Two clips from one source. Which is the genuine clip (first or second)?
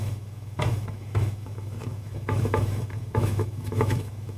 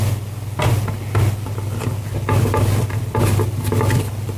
second